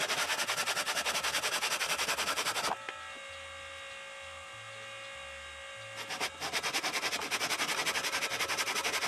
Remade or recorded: recorded